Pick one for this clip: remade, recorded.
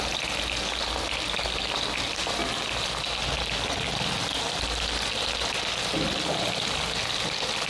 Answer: recorded